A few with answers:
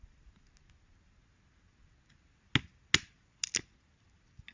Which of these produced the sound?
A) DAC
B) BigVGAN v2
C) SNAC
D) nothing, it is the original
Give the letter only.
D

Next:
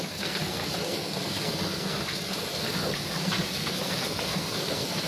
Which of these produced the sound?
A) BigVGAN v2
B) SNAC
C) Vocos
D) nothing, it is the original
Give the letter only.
B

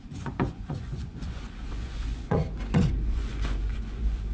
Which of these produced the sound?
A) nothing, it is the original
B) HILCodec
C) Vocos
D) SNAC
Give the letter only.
C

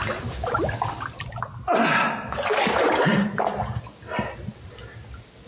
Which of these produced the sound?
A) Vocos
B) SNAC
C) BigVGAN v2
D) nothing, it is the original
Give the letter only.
D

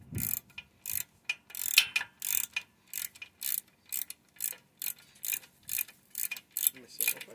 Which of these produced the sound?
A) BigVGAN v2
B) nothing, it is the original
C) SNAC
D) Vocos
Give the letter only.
B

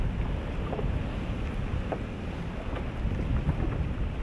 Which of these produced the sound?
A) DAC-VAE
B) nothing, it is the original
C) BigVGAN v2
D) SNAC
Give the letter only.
B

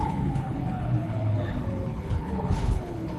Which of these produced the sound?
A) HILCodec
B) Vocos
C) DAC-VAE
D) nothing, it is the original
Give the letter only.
A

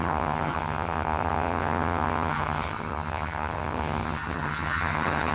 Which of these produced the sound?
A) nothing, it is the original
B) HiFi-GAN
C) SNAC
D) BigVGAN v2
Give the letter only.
B